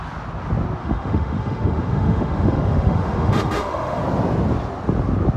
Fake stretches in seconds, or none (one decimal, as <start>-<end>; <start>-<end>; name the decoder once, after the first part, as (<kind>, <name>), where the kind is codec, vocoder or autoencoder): 0.8-4.0 (autoencoder, DAC-VAE)